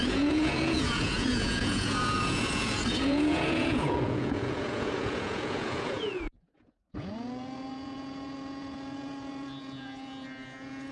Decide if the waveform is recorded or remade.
remade